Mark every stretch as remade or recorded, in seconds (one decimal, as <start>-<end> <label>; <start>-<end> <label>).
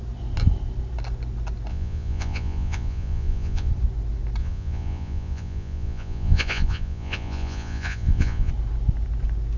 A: 0.0-1.7 recorded; 1.7-3.7 remade; 3.7-4.4 recorded; 4.4-8.5 remade; 8.5-9.6 recorded